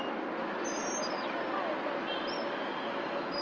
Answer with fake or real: real